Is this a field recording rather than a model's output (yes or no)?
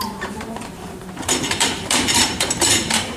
no